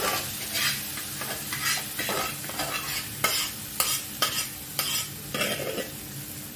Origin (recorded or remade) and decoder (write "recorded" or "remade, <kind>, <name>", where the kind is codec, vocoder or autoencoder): recorded